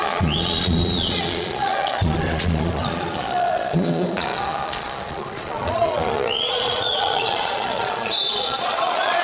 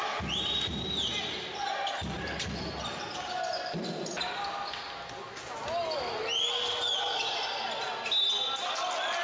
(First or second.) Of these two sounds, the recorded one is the second